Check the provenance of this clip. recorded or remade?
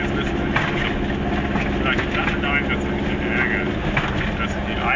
recorded